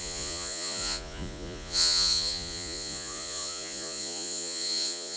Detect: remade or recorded remade